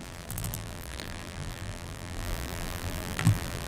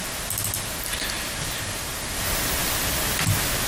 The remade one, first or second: first